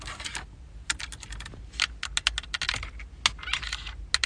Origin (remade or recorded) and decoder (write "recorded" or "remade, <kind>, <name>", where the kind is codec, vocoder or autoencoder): recorded